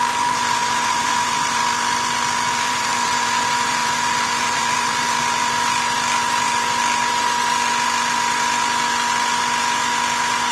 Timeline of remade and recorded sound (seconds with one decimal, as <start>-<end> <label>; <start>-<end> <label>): 0.0-1.6 remade; 1.6-2.5 recorded; 2.5-5.2 remade; 5.2-10.5 recorded